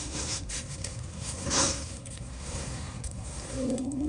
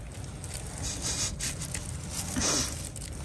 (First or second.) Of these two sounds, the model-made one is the first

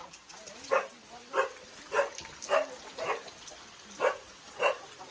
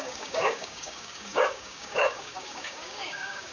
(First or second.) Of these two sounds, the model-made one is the second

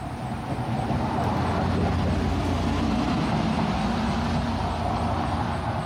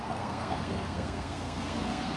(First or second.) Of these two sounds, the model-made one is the second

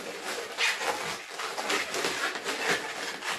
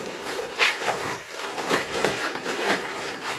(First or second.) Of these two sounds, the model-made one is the second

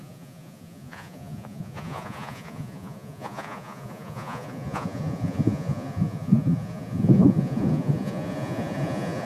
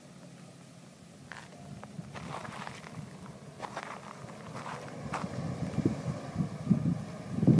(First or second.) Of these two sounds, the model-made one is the first